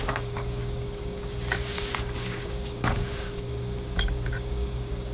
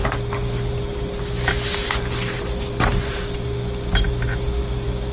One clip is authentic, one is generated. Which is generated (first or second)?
first